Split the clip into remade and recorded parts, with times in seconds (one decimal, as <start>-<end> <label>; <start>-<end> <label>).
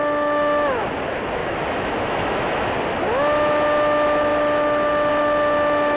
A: 0.0-1.4 recorded; 1.4-2.7 remade; 2.7-6.0 recorded